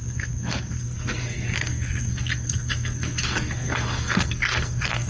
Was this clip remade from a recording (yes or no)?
yes